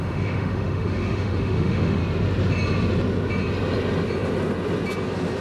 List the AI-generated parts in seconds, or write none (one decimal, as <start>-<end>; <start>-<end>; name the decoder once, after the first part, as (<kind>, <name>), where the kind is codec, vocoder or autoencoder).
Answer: 0.0-2.0 (autoencoder, DAC-VAE)